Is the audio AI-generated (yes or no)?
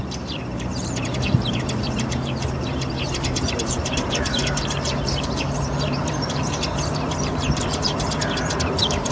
yes